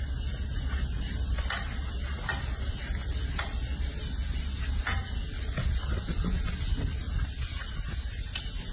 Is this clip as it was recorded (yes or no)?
yes